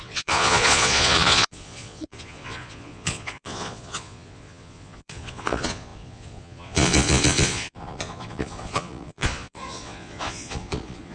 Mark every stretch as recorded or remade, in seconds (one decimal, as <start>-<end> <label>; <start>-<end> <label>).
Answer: 0.0-11.1 remade